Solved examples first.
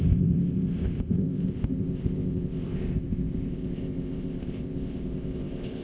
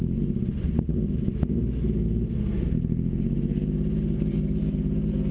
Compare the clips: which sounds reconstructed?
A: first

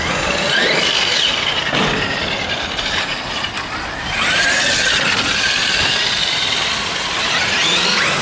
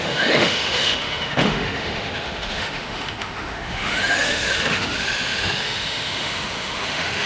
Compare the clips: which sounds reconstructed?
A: second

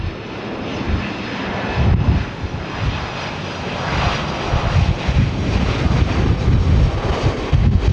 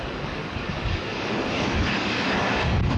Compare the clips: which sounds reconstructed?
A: second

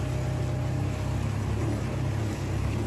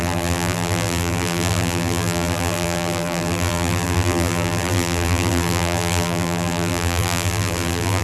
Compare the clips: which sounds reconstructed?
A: second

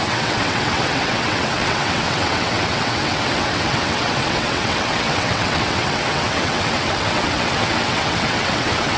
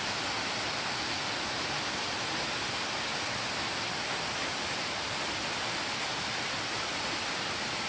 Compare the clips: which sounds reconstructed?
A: first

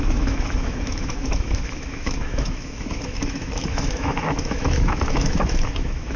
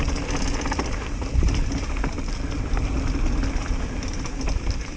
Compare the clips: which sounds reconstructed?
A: first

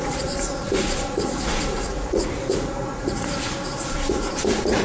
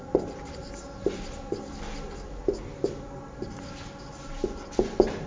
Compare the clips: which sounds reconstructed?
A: first